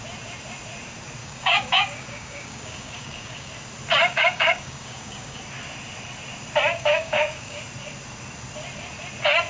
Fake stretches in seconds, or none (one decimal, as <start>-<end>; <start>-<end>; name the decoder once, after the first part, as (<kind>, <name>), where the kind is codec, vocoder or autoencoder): 1.2-3.5 (codec, DAC); 4.0-5.4; 6.7-7.6